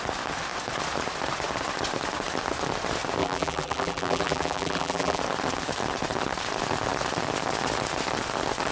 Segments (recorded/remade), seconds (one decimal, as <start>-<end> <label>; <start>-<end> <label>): 0.0-3.2 recorded; 3.2-5.2 remade; 5.2-8.7 recorded